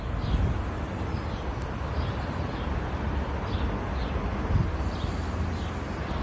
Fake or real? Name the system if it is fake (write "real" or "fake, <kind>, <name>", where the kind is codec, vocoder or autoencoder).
real